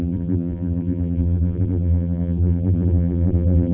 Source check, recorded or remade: remade